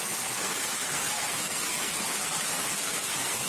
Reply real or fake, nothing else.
fake